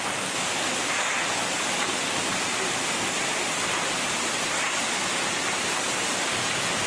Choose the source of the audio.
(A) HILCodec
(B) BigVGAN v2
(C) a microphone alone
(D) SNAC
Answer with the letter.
C